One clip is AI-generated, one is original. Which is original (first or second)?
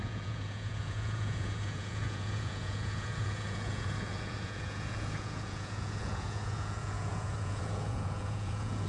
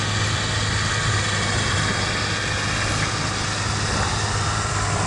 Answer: second